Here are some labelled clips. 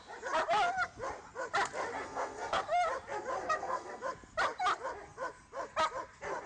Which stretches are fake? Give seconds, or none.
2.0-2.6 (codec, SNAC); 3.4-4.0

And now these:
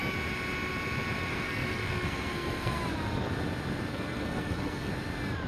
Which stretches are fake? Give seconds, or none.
1.3-2.8 (codec, SNAC); 3.9-4.9

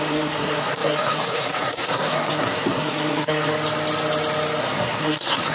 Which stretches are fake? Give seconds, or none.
0.0-3.5 (codec, SNAC); 4.6-5.5

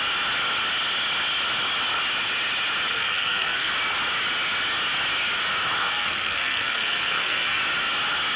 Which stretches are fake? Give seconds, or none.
2.9-3.7 (codec, SNAC); 5.8-7.6

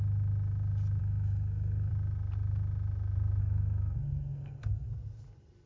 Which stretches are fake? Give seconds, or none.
1.0-1.9 (codec, SNAC); 3.4-4.9

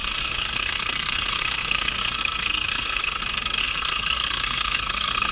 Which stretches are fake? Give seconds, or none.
0.0-3.2 (codec, SNAC); 3.6-5.3

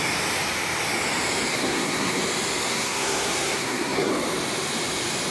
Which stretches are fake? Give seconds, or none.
1.5-2.2 (codec, SNAC); 2.7-4.1